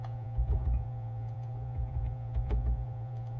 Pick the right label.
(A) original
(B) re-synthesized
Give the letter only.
B